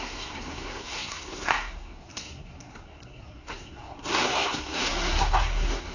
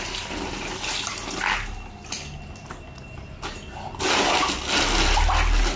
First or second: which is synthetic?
first